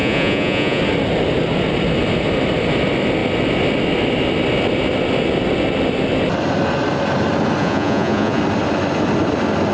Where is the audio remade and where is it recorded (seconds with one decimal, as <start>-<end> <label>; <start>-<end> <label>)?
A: 0.0-0.8 remade; 0.8-7.6 recorded; 7.6-8.4 remade; 8.4-9.7 recorded